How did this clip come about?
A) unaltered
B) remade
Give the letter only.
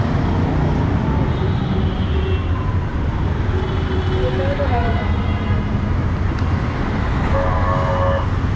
A